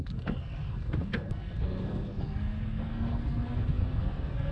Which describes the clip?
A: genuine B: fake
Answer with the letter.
B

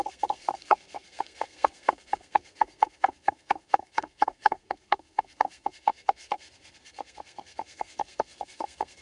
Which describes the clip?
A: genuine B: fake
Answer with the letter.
B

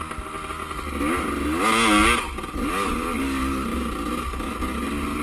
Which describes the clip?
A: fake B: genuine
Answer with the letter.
B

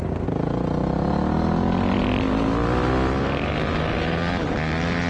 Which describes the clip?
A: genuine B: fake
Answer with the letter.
A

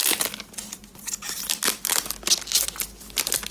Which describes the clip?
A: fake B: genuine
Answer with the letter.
B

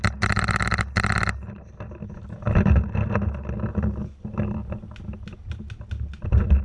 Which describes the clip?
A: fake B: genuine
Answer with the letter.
B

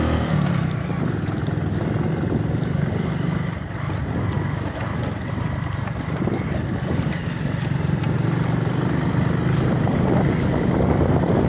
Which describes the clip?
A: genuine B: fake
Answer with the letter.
A